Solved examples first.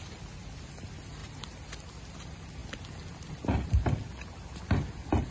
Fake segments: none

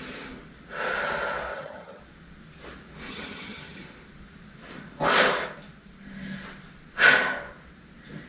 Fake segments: 1.5-2.0 (vocoder, HiFi-GAN); 3.1-3.8

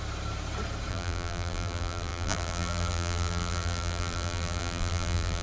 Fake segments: 0.9-5.4 (vocoder, BigVGAN v2)

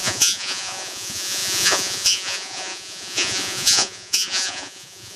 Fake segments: 0.0-5.2 (vocoder, Vocos)

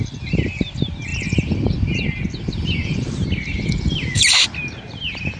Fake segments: none